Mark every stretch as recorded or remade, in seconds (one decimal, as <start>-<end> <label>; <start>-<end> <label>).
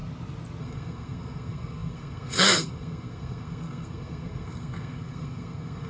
0.0-0.6 recorded; 0.6-5.9 remade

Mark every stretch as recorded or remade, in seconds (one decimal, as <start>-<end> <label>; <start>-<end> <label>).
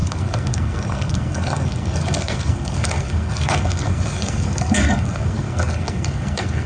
0.0-6.7 remade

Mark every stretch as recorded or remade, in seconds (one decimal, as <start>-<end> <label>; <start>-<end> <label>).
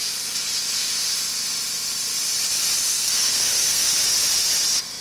0.0-2.9 recorded; 2.9-3.9 remade; 3.9-5.0 recorded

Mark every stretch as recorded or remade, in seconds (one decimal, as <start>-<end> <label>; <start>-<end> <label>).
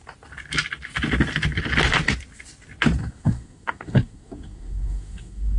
0.0-3.0 recorded; 3.0-5.6 remade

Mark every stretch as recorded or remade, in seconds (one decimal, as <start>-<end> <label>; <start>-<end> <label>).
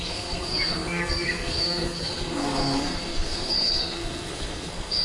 0.0-5.0 remade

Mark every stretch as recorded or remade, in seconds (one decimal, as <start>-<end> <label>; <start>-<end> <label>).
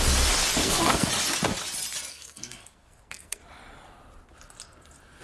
0.0-0.6 recorded; 0.6-1.1 remade; 1.1-2.1 recorded; 2.1-3.4 remade; 3.4-5.2 recorded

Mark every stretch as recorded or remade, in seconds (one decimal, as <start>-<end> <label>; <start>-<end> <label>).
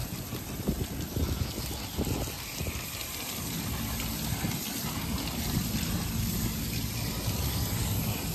0.0-8.3 recorded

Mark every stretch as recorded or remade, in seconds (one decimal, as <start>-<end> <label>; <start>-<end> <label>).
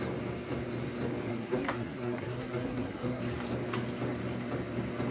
0.0-1.3 recorded; 1.3-3.2 remade; 3.2-5.1 recorded